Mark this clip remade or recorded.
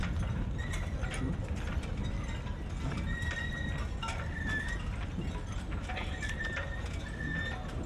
recorded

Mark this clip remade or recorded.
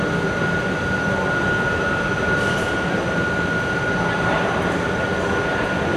recorded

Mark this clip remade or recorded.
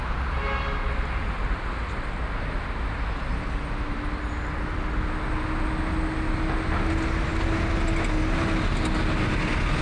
recorded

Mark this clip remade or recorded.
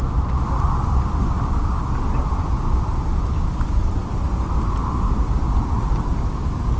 recorded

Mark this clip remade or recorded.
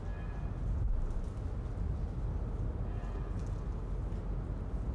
recorded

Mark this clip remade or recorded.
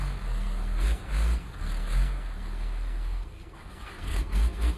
remade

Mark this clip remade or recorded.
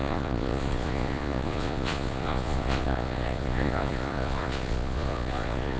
remade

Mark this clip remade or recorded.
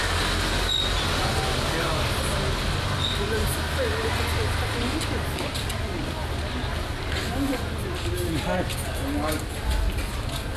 recorded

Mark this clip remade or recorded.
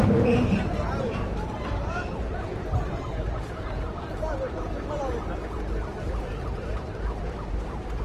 remade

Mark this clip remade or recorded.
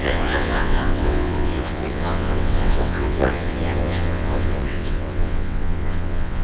remade